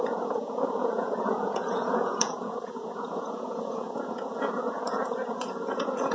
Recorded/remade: remade